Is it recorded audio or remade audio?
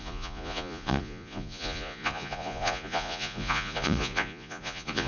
remade